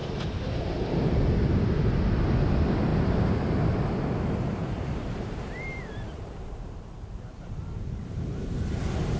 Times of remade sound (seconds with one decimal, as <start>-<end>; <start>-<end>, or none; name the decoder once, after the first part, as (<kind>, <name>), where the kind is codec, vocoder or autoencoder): 0.0-1.1 (vocoder, BigVGAN v2); 4.6-8.5